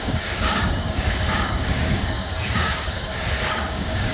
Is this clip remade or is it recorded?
remade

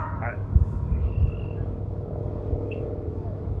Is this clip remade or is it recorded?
remade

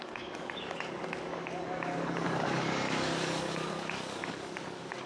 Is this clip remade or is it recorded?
remade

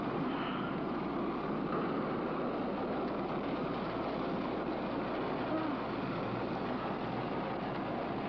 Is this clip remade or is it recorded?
recorded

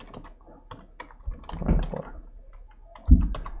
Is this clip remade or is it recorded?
recorded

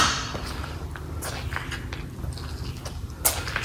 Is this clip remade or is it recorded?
recorded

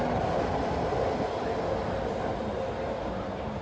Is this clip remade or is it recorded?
recorded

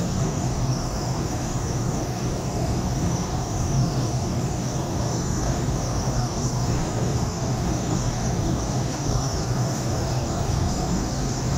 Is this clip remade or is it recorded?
remade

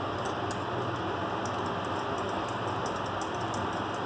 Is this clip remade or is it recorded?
recorded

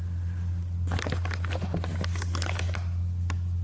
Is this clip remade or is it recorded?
recorded